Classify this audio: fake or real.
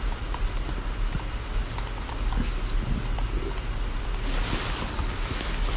real